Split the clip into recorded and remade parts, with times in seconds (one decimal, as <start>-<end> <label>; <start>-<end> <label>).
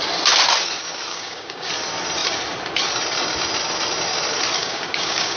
0.0-1.1 recorded; 1.1-1.7 remade; 1.7-4.6 recorded; 4.6-5.4 remade